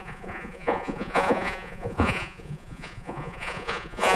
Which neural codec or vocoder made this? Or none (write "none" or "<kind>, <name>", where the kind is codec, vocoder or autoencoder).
vocoder, Vocos